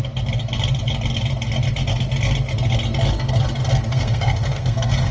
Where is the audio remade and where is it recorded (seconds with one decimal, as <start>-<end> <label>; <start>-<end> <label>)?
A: 0.0-3.9 recorded; 3.9-5.1 remade